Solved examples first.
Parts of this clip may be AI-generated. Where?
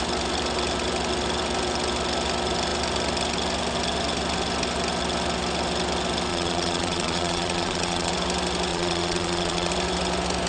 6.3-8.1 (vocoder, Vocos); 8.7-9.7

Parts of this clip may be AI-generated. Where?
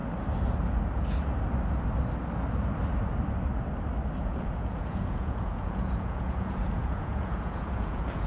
4.2-8.3 (vocoder, Vocos)